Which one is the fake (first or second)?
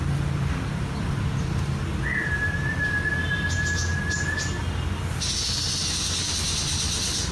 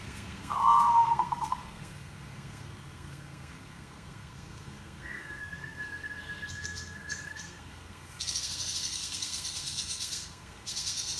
second